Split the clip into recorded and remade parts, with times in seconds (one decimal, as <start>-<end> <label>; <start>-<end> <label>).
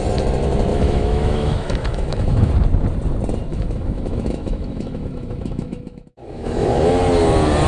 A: 0.0-0.7 recorded; 0.7-2.5 remade; 2.5-3.5 recorded; 3.5-6.9 remade; 6.9-7.7 recorded